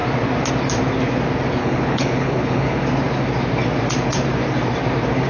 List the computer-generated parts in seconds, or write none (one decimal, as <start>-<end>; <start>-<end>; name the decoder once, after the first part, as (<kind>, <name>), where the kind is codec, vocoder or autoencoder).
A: 1.6-2.8 (codec, HILCodec)